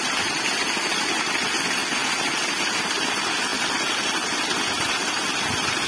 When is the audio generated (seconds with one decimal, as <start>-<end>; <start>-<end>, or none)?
none